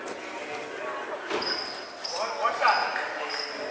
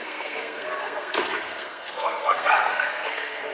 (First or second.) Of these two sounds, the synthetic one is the second